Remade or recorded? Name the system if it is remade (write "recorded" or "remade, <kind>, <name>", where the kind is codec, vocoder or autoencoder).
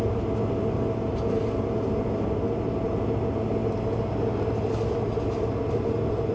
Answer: recorded